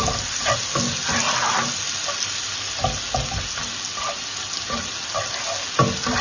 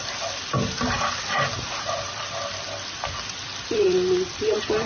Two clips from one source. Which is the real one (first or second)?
first